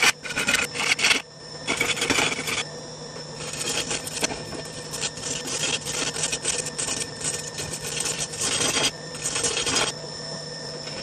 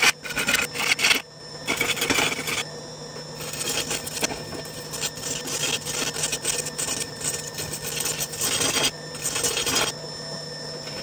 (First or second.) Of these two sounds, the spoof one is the first